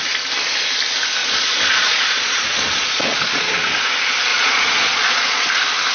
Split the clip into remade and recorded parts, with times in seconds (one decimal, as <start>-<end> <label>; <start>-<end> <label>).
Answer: 0.0-1.2 recorded; 1.2-3.9 remade; 3.9-4.3 recorded; 4.3-5.5 remade; 5.5-5.9 recorded